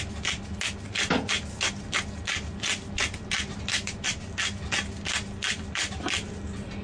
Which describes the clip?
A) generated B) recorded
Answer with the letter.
B